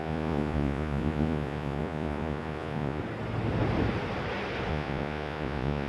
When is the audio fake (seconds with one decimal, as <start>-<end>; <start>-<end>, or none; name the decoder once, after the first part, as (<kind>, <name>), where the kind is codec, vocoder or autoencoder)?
0.0-3.0 (vocoder, Vocos); 4.7-5.9